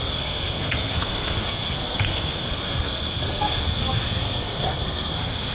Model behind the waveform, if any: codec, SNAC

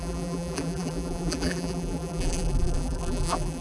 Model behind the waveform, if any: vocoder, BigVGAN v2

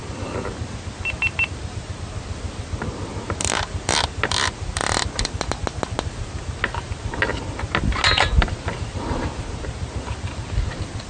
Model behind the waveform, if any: none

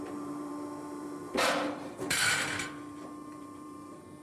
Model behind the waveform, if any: vocoder, BigVGAN v2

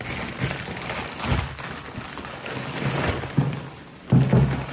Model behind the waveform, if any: none